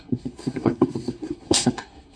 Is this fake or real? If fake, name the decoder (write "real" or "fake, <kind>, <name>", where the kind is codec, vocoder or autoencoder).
fake, codec, SNAC